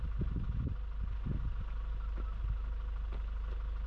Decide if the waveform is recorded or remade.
recorded